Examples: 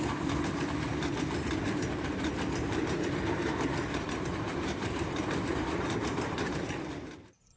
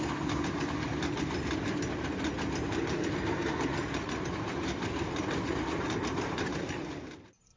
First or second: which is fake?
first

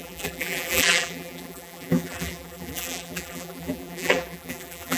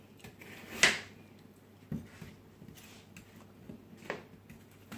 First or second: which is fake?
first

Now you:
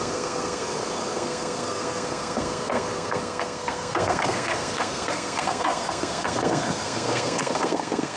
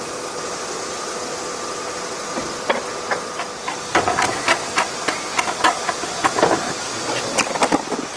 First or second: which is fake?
first